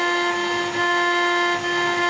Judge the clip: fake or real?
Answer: real